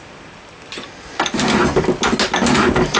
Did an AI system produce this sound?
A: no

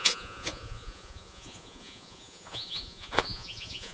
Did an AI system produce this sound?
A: yes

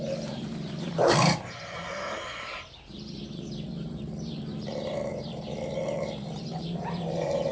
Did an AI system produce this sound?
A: yes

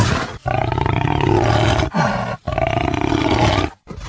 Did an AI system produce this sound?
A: no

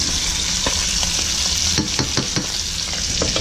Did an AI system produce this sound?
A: no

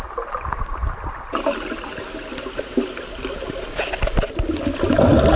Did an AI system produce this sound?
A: no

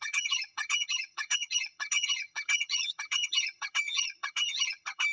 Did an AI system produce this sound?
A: yes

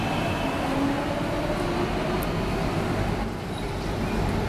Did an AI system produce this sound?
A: no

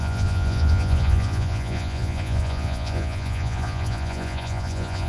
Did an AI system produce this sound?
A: yes